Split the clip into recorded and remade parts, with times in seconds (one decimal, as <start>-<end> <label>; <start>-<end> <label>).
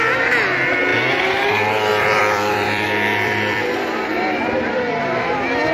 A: 0.0-1.9 recorded; 1.9-5.3 remade; 5.3-5.7 recorded